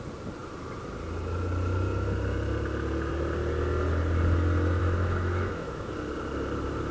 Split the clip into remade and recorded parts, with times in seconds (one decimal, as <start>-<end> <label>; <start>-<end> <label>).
0.0-4.8 recorded; 4.8-5.9 remade; 5.9-6.9 recorded